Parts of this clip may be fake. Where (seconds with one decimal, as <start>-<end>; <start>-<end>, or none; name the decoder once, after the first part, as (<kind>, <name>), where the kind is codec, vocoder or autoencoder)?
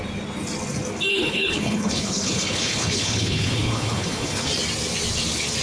1.1-4.5 (codec, HILCodec)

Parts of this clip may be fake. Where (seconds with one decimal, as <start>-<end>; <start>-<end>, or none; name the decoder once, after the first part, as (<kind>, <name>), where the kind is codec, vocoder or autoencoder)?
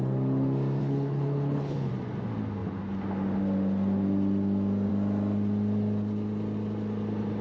0.8-1.9 (codec, HILCodec)